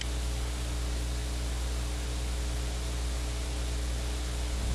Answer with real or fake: real